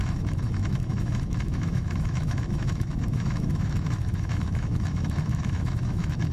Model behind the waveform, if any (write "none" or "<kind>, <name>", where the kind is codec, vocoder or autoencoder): autoencoder, DAC-VAE